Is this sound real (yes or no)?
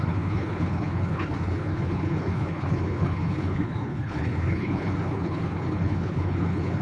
no